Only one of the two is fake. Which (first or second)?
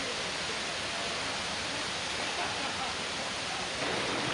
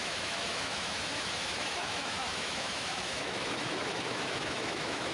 second